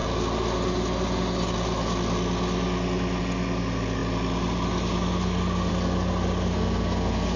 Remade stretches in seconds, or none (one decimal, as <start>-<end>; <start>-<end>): 6.5-7.4

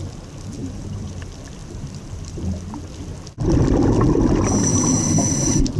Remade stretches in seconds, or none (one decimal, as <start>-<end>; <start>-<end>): 0.6-1.2; 1.6-2.4; 4.7-5.8

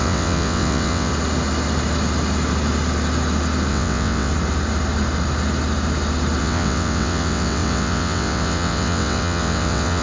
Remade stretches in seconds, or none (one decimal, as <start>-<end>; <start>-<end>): 0.0-1.1; 3.7-4.3; 6.4-10.0

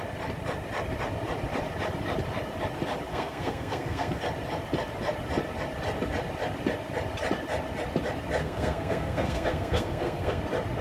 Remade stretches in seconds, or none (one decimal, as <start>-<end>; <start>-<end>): 3.1-4.2; 8.4-10.4

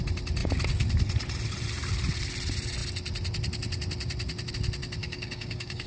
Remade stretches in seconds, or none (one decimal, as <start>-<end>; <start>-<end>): 5.0-5.9

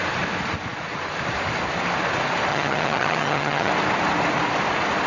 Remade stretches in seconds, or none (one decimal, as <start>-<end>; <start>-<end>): 2.5-3.7